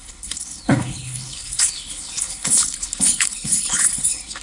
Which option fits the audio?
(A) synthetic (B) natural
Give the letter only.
A